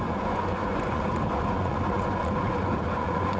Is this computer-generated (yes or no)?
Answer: yes